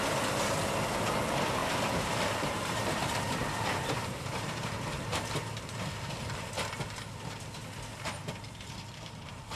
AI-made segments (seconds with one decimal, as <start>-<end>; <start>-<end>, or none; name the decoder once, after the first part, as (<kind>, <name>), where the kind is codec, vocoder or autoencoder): 1.6-6.5 (vocoder, BigVGAN v2); 7.9-9.6